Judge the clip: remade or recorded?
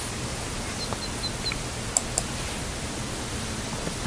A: recorded